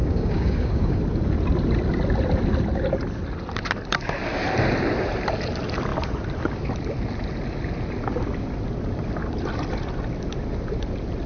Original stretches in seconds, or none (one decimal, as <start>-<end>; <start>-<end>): 1.0-11.3